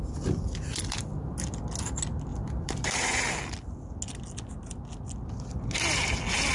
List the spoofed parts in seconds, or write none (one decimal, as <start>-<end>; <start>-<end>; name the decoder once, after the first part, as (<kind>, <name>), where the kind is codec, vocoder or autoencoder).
2.3-3.4 (vocoder, BigVGAN v2)

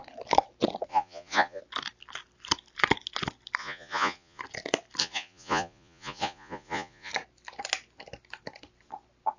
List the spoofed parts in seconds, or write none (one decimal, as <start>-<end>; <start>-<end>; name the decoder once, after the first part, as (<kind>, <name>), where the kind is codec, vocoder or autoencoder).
0.9-1.6 (vocoder, Vocos); 3.6-4.4; 5.0-7.1

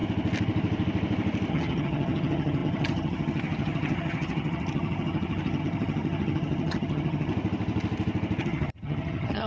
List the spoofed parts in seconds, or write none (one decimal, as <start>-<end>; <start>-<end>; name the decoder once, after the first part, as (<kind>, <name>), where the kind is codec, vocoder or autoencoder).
1.5-7.3 (vocoder, HiFi-GAN); 8.4-9.5

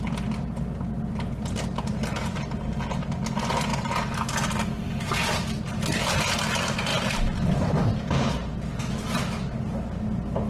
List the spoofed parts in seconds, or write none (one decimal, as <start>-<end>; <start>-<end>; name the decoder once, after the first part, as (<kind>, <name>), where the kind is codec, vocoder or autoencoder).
6.9-7.9 (vocoder, BigVGAN v2)

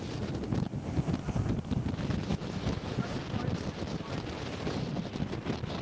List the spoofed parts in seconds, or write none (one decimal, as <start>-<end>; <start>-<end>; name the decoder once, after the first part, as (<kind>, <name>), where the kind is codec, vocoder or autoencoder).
2.3-3.0 (autoencoder, DAC-VAE)

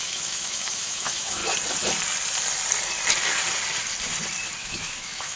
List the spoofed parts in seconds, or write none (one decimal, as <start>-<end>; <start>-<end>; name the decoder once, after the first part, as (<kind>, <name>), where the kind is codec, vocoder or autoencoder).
0.0-1.4 (autoencoder, DAC-VAE); 4.6-5.4

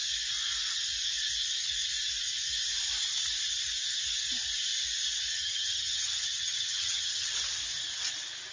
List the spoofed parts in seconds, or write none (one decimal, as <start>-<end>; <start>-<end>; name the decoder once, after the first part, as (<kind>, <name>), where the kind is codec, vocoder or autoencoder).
5.3-7.3 (vocoder, HiFi-GAN)